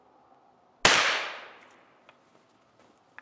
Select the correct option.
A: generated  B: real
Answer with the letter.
B